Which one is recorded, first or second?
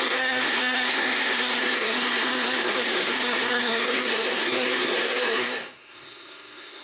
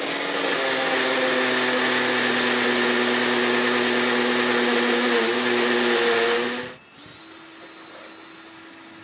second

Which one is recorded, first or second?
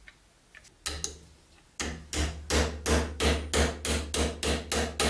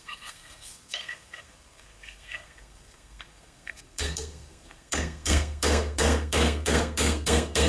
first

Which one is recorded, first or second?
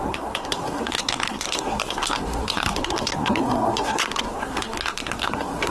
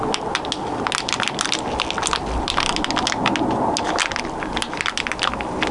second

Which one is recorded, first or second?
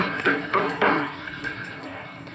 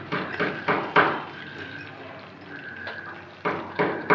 second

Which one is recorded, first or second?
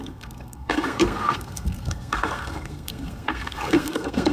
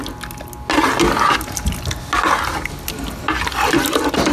second